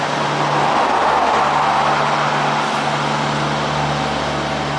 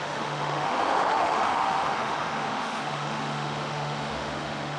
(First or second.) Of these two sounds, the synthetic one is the second